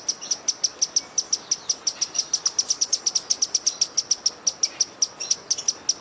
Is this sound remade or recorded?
recorded